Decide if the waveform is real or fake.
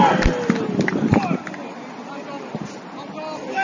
real